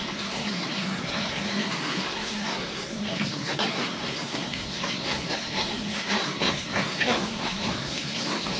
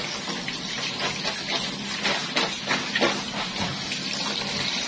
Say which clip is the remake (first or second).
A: first